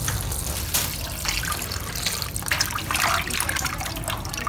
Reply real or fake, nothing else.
real